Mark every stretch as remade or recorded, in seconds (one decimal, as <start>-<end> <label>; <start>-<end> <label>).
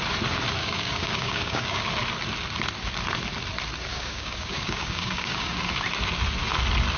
0.0-0.6 recorded; 0.6-1.9 remade; 1.9-3.9 recorded; 3.9-5.6 remade; 5.6-7.0 recorded